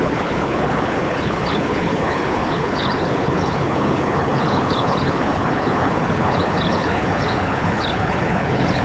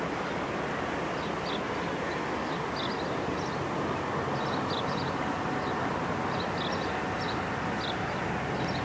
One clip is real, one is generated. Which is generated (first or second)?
first